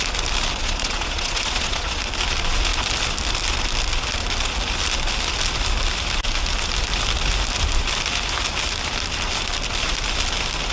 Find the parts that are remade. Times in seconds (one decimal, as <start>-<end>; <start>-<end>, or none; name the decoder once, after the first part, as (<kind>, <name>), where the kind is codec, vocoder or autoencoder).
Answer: 0.6-2.0 (vocoder, Vocos)